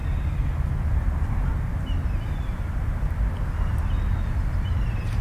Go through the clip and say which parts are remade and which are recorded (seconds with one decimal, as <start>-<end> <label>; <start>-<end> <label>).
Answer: 0.0-5.2 recorded

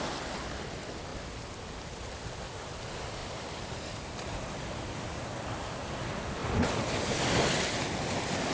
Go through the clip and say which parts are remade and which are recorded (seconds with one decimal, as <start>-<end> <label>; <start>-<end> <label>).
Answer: 0.0-3.2 recorded; 3.2-5.3 remade; 5.3-6.4 recorded; 6.4-7.2 remade; 7.2-8.5 recorded